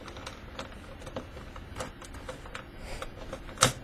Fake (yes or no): no